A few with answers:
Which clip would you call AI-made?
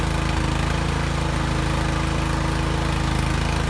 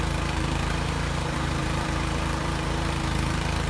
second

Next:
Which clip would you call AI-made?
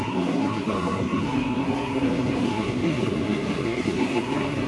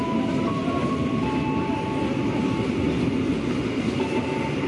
first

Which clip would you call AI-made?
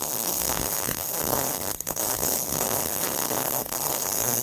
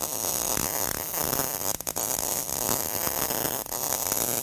first